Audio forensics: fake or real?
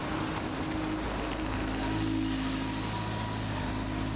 real